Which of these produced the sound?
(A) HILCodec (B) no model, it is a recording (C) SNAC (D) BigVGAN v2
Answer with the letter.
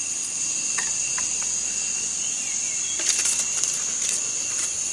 B